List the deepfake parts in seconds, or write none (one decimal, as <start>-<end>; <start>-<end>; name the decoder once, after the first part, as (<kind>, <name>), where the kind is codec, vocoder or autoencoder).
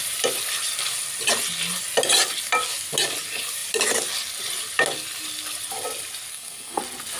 6.3-6.8 (codec, SNAC)